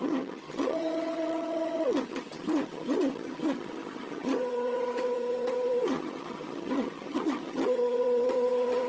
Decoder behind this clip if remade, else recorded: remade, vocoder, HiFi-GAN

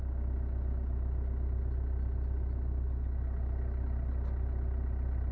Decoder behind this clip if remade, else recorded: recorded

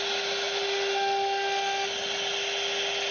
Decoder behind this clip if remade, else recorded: recorded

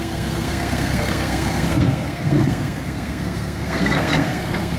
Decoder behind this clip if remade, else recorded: remade, codec, SNAC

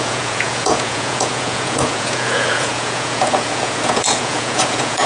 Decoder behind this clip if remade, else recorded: remade, vocoder, Vocos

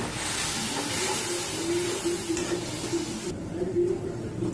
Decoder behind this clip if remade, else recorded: recorded